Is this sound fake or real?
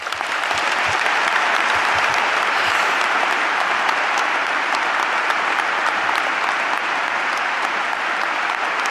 fake